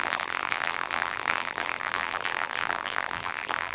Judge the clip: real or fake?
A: fake